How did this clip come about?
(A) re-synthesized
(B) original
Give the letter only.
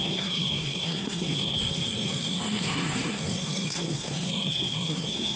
A